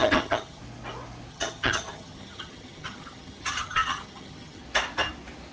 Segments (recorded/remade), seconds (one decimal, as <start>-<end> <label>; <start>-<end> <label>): 0.0-0.6 remade; 0.6-1.3 recorded; 1.3-4.6 remade; 4.6-5.5 recorded